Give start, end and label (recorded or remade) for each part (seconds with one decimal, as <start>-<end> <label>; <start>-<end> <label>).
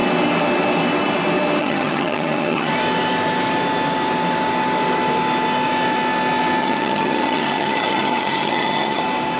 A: 0.0-1.6 recorded; 1.6-2.7 remade; 2.7-6.6 recorded; 6.6-9.0 remade; 9.0-9.4 recorded